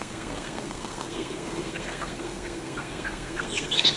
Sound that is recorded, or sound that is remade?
remade